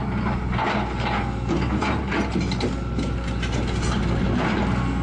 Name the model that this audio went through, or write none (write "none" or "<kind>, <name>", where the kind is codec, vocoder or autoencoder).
none